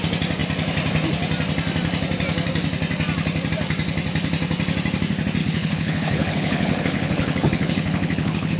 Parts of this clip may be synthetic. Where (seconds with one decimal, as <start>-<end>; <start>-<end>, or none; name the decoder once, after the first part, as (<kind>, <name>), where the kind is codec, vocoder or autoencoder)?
5.4-8.6 (codec, HILCodec)